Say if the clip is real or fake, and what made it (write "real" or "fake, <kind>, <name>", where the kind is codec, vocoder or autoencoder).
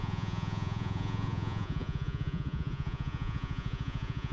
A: fake, vocoder, Vocos